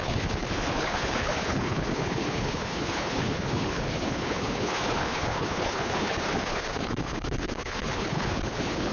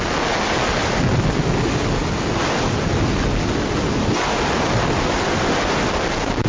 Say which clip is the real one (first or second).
second